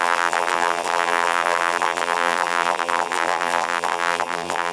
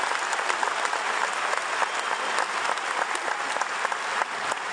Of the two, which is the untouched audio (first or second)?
second